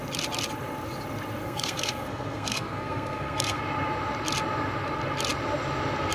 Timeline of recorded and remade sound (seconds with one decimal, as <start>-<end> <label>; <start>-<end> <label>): 0.0-1.4 recorded; 1.4-3.6 remade; 3.6-6.1 recorded